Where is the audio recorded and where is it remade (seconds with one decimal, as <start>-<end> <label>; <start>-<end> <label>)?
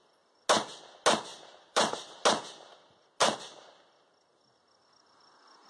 0.0-1.3 recorded; 1.3-2.1 remade; 2.1-5.7 recorded